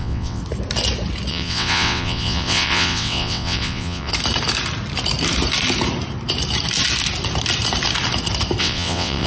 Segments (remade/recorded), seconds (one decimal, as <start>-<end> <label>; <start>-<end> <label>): 0.0-0.4 remade; 0.4-1.3 recorded; 1.3-4.1 remade; 4.1-8.6 recorded; 8.6-9.3 remade